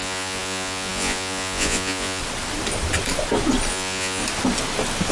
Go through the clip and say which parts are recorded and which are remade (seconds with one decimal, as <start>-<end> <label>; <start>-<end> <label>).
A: 0.0-2.2 remade; 2.2-3.7 recorded; 3.7-4.2 remade; 4.2-5.1 recorded